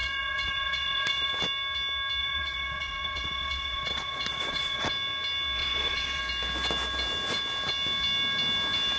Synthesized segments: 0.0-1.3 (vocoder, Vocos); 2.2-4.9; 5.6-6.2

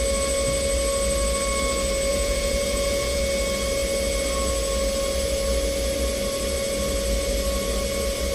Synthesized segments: 2.1-3.2 (vocoder, Vocos)

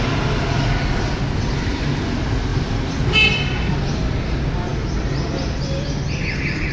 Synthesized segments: none

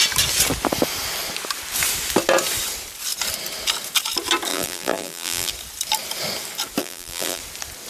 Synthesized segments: 4.5-5.5 (vocoder, BigVGAN v2); 6.8-7.4

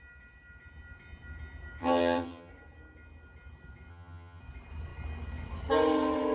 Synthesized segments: 1.8-2.5 (vocoder, HiFi-GAN); 3.9-4.4

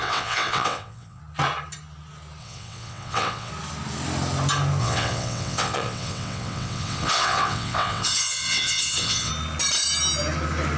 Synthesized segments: 0.0-1.2 (vocoder, WaveNeXt); 2.4-3.5; 4.8-9.3

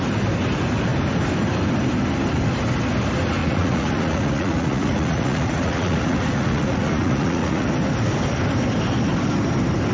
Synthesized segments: 3.4-7.7 (vocoder, Vocos)